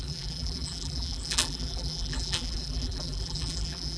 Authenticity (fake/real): fake